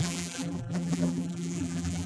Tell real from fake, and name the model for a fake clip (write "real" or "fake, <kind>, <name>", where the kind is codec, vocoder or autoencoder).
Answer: fake, vocoder, BigVGAN v2